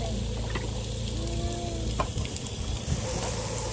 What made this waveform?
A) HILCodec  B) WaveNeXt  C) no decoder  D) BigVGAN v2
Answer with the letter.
C